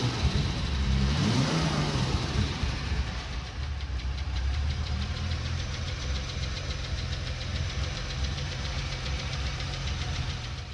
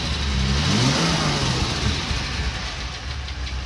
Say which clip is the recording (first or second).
second